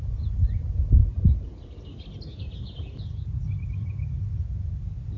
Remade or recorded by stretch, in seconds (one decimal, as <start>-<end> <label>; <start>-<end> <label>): 0.0-5.2 recorded